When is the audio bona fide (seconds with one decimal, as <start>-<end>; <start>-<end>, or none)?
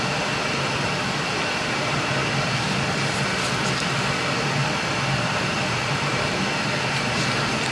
0.0-2.2; 3.1-4.6; 6.4-7.7